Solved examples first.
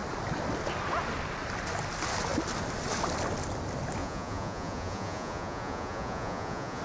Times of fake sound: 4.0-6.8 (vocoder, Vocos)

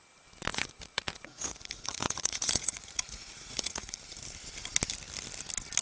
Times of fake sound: 0.5-4.0 (vocoder, Vocos)

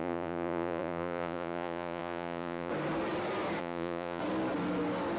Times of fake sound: 0.0-2.7 (vocoder, Vocos); 3.6-4.2